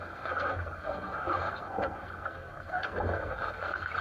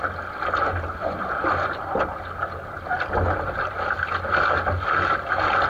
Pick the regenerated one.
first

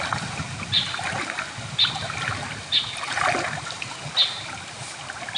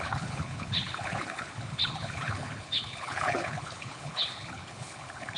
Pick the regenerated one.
second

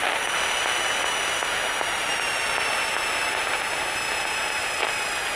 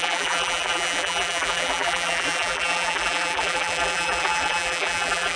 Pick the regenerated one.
second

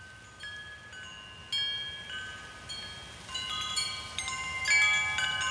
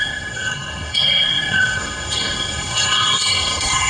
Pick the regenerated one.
second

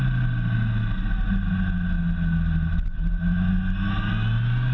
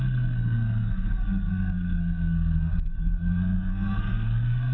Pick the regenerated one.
second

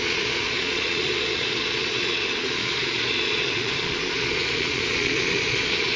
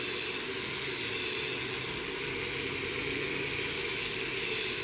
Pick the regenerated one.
first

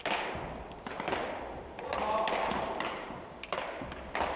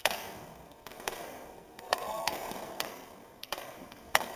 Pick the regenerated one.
second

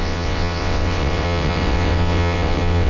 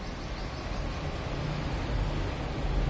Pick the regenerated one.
first